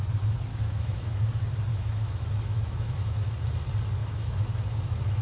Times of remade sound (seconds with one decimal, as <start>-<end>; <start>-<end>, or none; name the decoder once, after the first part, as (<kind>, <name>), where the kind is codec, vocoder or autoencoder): 0.5-1.2 (autoencoder, DAC-VAE); 1.7-3.3; 4.0-5.2